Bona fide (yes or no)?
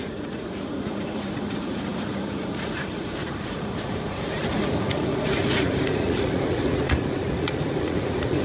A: no